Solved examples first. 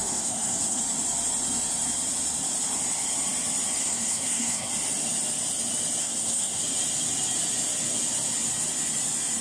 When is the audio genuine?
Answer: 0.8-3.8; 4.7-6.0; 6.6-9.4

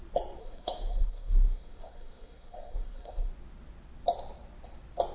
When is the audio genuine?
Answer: 0.0-0.4; 3.3-5.1

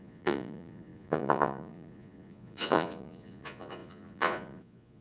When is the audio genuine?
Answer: none

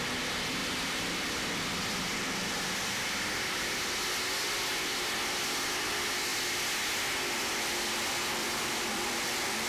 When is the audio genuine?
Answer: 0.0-0.6; 3.7-8.4

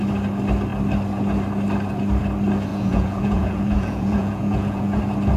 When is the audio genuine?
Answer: 0.0-2.7; 5.0-5.4